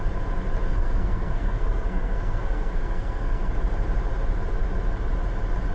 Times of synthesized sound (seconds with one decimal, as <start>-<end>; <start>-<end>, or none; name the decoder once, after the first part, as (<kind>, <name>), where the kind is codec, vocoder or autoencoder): 0.7-3.5 (codec, SNAC)